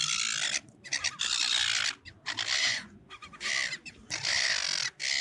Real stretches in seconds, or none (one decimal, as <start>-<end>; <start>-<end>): 0.0-2.6; 3.5-5.2